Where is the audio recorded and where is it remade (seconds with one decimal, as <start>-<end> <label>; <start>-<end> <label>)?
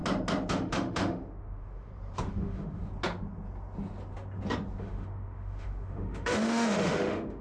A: 0.0-0.5 recorded; 0.5-1.9 remade; 1.9-2.4 recorded; 2.4-2.8 remade; 2.8-4.8 recorded; 4.8-7.4 remade